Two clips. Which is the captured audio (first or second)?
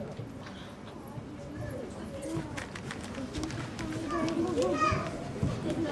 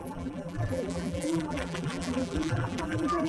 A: first